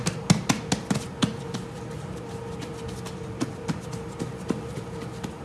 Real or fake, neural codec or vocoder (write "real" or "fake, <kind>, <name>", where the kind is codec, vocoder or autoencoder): real